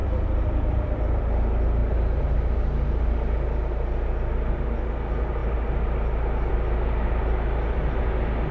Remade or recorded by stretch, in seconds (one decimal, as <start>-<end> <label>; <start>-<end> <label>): 0.0-1.2 remade; 1.2-8.5 recorded